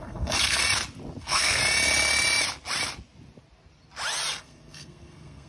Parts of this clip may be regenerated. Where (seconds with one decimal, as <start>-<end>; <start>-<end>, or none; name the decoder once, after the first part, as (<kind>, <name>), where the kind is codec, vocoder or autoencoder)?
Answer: 0.0-0.6 (codec, SNAC); 1.2-1.6; 4.4-5.5